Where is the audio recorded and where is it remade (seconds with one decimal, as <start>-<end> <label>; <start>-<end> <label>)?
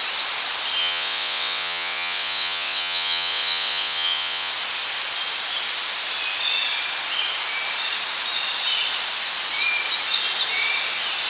0.0-0.8 recorded; 0.8-4.5 remade; 4.5-11.3 recorded